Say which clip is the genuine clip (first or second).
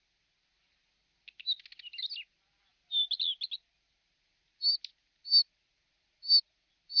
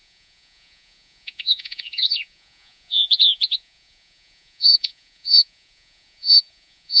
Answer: first